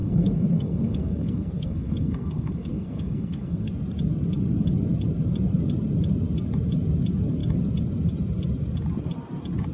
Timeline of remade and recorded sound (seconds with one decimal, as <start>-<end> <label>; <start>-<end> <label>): 0.0-3.7 remade; 3.7-9.7 recorded